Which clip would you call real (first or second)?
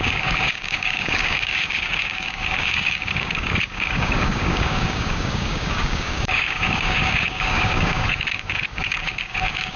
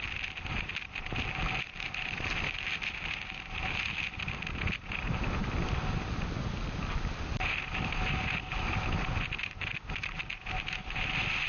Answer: second